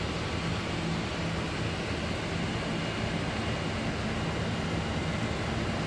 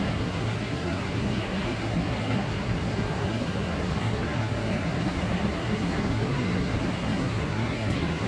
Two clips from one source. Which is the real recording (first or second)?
first